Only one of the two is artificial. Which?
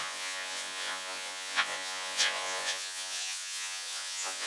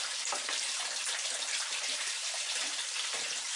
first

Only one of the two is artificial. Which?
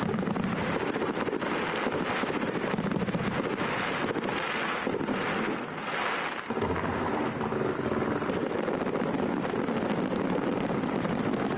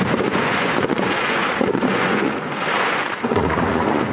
second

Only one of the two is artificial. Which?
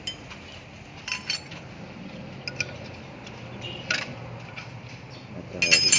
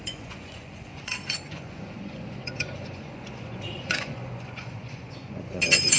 second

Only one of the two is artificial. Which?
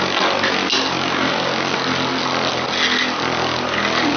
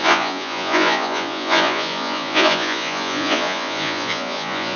second